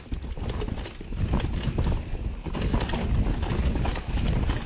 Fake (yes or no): no